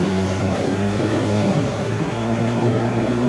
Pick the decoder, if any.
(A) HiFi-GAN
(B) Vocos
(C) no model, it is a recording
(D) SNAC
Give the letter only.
D